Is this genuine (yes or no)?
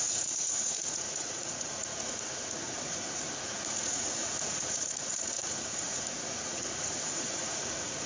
no